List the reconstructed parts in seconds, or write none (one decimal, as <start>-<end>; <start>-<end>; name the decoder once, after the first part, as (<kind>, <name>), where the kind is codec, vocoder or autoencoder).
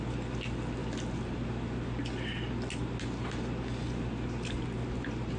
none